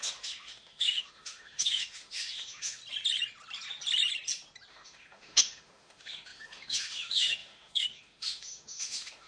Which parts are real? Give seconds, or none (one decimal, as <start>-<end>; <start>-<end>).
2.8-4.7